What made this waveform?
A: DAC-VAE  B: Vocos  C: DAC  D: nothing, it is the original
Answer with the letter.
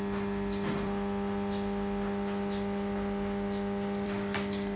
D